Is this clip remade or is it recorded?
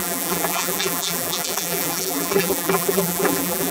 remade